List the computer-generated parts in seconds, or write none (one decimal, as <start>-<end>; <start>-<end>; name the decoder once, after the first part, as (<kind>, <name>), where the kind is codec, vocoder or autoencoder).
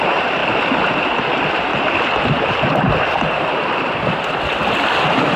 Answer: 1.7-4.0 (vocoder, BigVGAN v2)